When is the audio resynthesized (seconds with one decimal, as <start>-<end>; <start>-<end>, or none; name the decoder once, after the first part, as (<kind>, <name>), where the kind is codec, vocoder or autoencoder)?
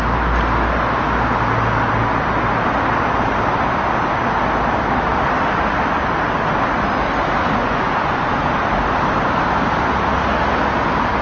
7.6-8.3 (vocoder, Vocos)